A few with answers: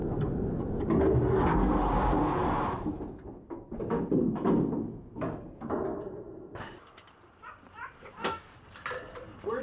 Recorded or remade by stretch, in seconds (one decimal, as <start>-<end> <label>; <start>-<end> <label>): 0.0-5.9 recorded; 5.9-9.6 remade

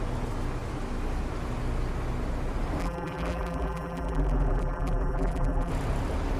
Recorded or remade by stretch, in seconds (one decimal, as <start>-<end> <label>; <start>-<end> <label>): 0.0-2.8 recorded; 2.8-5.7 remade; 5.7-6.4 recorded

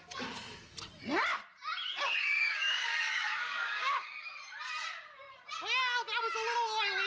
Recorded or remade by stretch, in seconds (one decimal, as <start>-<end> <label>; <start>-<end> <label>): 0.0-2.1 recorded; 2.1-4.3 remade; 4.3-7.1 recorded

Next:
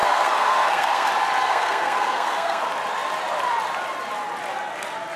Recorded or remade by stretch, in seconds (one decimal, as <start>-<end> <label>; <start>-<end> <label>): 0.0-1.1 remade; 1.1-1.5 recorded; 1.5-2.6 remade; 2.6-5.2 recorded